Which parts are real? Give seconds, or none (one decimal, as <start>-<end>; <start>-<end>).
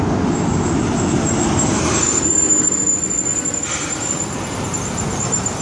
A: 0.0-3.3; 5.0-5.6